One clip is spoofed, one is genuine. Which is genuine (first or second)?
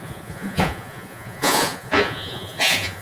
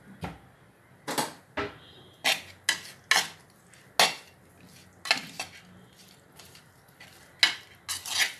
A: second